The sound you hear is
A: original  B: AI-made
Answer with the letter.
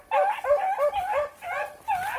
A